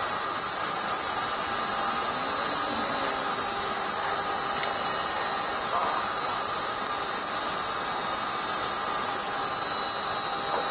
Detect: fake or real real